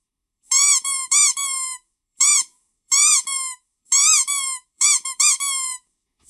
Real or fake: fake